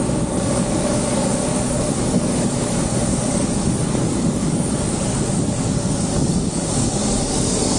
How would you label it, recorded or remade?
remade